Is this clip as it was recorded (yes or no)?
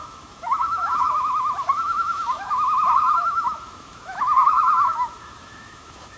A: no